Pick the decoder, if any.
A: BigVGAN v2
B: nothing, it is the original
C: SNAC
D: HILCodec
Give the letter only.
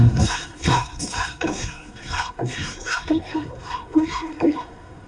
C